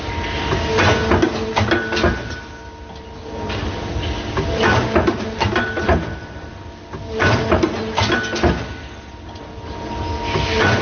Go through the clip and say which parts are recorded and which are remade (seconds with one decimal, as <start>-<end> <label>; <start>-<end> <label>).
0.0-10.8 recorded